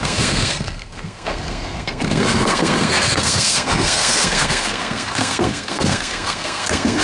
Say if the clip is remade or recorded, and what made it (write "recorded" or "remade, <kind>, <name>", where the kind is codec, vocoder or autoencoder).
remade, codec, SNAC